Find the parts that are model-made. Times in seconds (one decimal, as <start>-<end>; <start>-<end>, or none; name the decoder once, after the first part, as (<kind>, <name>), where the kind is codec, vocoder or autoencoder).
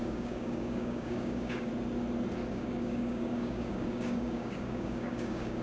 0.0-1.7 (codec, DAC); 2.5-5.6